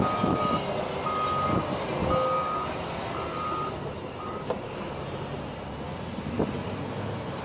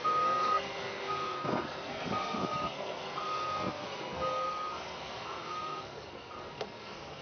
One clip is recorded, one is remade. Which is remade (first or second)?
second